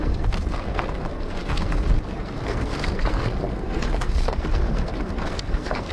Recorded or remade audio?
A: remade